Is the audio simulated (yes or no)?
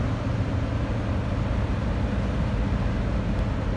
no